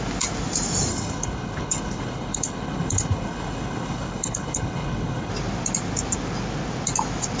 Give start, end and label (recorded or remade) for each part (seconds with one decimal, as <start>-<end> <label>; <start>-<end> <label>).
0.0-0.9 recorded; 0.9-5.3 remade; 5.3-7.4 recorded